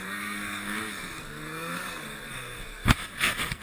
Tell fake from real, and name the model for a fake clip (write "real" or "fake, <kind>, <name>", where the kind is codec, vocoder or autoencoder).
fake, codec, SNAC